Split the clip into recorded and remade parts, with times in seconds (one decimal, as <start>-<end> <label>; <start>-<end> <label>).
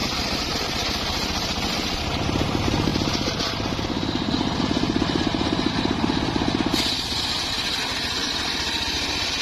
0.0-9.4 remade